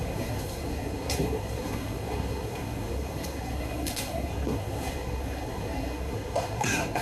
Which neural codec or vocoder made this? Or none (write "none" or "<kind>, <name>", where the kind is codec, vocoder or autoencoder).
codec, SNAC